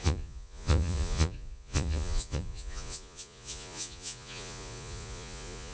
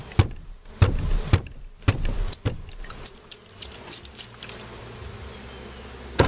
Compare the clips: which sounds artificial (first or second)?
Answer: first